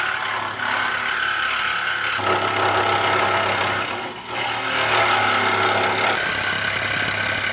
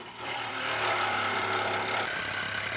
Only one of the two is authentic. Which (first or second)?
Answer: first